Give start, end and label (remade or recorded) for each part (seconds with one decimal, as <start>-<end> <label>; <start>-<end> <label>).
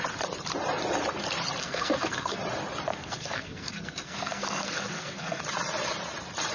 0.0-1.6 recorded; 1.6-2.4 remade; 2.4-2.9 recorded; 2.9-5.4 remade; 5.4-6.5 recorded